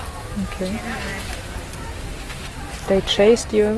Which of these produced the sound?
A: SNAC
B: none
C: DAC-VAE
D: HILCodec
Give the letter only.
B